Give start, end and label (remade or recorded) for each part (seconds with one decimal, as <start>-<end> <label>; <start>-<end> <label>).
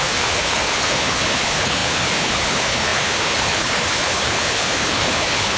0.0-5.6 remade